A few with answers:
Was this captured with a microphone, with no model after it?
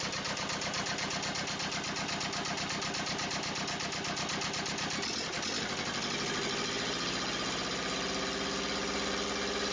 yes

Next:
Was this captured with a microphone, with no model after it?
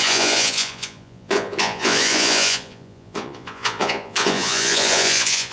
no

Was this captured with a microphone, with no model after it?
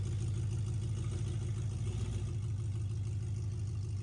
yes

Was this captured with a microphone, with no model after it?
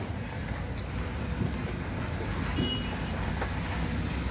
yes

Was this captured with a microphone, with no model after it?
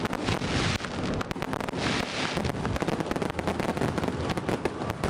yes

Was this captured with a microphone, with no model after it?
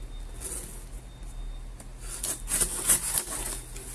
yes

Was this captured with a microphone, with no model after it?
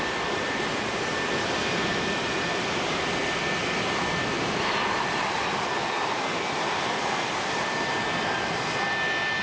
yes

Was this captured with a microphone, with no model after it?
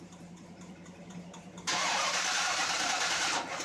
no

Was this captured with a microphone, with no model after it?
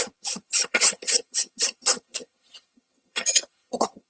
no